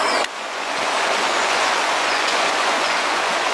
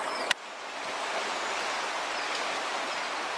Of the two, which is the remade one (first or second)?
first